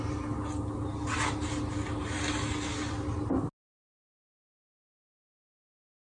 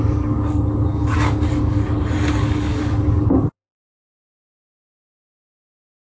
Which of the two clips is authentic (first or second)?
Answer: first